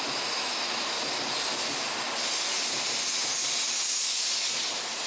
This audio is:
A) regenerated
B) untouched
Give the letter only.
B